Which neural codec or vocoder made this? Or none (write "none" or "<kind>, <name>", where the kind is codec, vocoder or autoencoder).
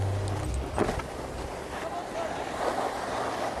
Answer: none